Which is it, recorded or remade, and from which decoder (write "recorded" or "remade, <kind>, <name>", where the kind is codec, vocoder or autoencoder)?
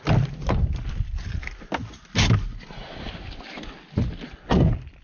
recorded